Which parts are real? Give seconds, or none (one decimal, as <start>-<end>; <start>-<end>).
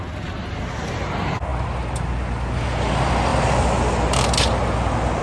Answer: 0.0-5.2